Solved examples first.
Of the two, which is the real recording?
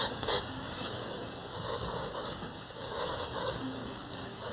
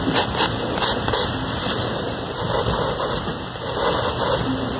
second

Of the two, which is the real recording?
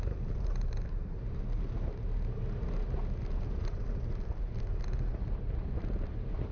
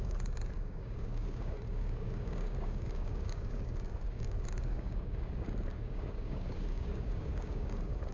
first